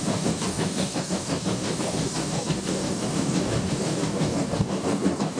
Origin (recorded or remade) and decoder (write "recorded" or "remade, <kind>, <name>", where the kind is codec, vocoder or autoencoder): remade, codec, DAC